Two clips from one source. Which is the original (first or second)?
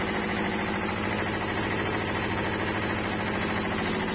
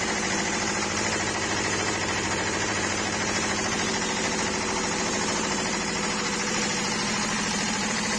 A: first